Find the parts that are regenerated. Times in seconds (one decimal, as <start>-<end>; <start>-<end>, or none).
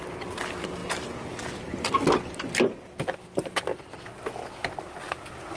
none